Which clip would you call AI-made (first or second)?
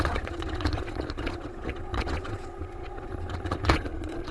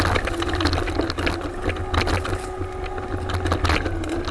first